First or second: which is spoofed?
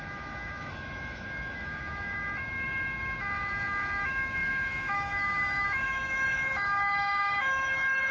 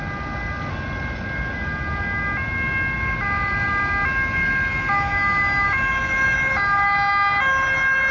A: first